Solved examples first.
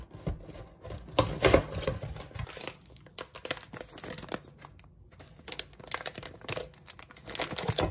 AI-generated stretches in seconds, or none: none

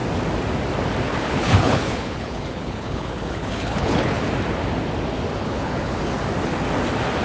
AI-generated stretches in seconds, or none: 1.1-4.3 (codec, HILCodec); 5.4-6.0

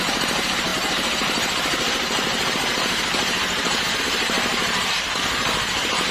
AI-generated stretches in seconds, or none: 0.0-6.1 (vocoder, BigVGAN v2)

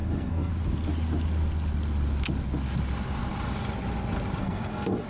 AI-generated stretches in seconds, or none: 0.0-0.5 (codec, SNAC); 4.4-5.1

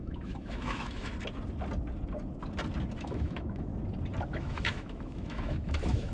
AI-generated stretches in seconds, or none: 0.0-1.1 (autoencoder, DAC-VAE); 3.0-3.7; 4.3-6.1